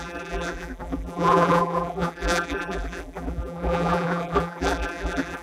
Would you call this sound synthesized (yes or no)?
yes